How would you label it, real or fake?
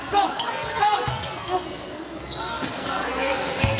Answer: fake